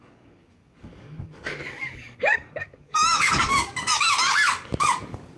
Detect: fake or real fake